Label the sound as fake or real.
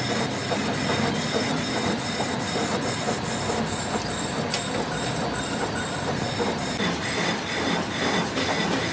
real